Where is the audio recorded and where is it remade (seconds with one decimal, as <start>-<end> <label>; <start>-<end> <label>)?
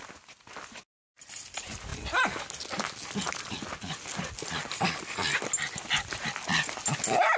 0.0-7.4 recorded